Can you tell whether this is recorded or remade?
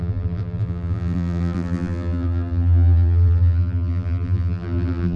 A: remade